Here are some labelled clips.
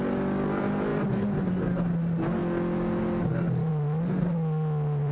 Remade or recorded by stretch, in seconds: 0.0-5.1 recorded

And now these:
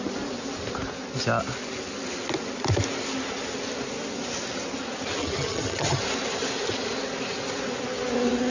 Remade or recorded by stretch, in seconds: 0.0-5.2 recorded; 5.2-6.0 remade; 6.0-8.5 recorded

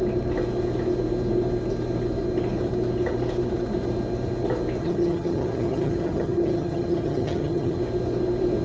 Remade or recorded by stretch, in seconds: 0.0-4.8 recorded; 4.8-7.8 remade; 7.8-8.6 recorded

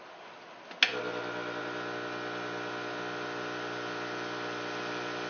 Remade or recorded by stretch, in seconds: 0.0-5.3 recorded

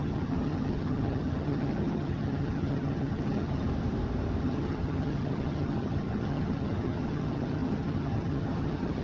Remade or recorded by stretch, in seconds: 0.0-3.7 remade; 3.7-4.4 recorded; 4.4-9.0 remade